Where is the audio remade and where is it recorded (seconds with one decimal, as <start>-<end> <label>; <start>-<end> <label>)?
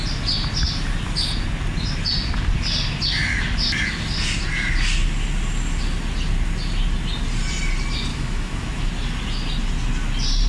0.0-8.1 recorded; 8.1-8.9 remade; 8.9-10.5 recorded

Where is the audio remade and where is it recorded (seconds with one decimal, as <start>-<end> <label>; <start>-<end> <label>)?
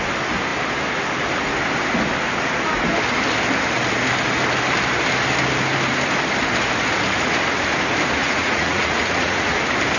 0.0-8.2 recorded; 8.2-9.6 remade; 9.6-10.0 recorded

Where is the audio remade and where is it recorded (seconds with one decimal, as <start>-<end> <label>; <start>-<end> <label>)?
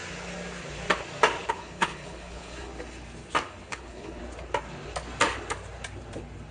0.0-1.5 recorded; 1.5-2.7 remade; 2.7-3.7 recorded; 3.7-4.2 remade; 4.2-6.5 recorded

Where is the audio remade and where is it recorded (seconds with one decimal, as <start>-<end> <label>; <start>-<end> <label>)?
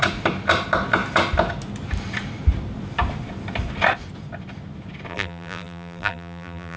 0.0-5.1 recorded; 5.1-6.8 remade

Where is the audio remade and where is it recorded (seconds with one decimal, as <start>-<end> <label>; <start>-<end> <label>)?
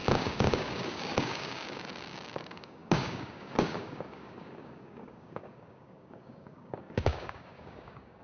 0.0-8.2 remade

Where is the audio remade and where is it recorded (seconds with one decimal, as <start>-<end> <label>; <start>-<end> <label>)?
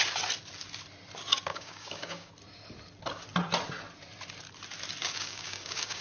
0.0-1.5 recorded; 1.5-2.3 remade; 2.3-5.0 recorded; 5.0-6.0 remade